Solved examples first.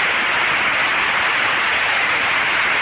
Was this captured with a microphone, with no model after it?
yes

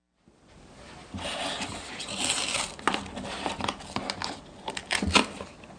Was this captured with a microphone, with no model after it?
yes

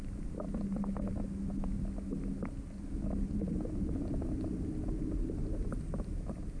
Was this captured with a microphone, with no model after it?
yes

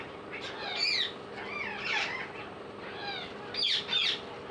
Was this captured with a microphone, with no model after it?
yes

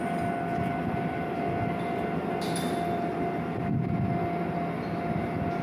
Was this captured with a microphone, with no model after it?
yes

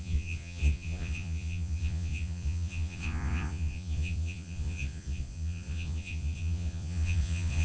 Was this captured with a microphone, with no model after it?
no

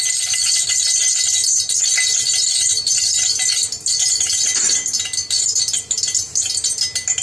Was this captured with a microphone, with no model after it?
yes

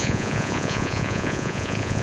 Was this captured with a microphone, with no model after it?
no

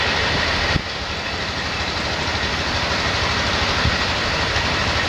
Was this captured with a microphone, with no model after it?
yes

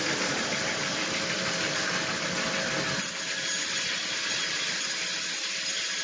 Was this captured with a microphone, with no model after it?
yes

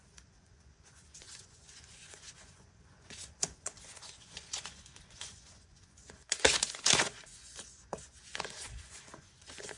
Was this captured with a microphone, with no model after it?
no